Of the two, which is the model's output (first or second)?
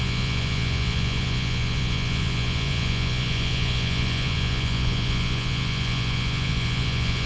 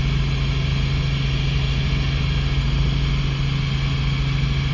first